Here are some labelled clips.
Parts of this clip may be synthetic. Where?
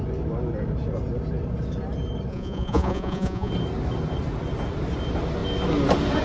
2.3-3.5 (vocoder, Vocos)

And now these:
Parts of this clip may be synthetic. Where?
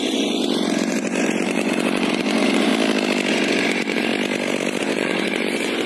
0.0-2.7 (vocoder, Vocos); 3.3-4.1; 4.8-5.9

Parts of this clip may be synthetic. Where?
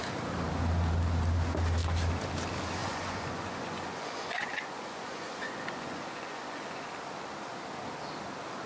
2.8-6.9 (vocoder, Vocos)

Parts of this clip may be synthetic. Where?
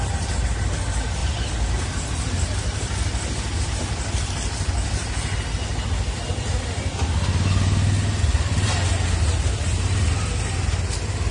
none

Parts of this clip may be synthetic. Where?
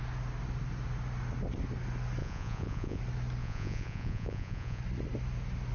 2.2-3.0 (vocoder, Vocos); 3.4-4.8